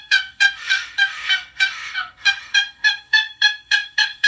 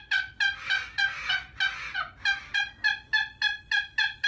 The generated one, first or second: first